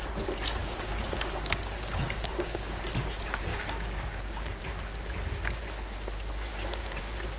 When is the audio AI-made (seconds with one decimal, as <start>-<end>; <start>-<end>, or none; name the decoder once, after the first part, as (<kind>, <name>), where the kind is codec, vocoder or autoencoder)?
0.6-2.8 (codec, DAC); 3.5-4.6; 6.5-7.0